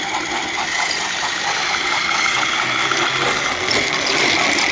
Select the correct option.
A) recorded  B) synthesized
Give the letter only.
A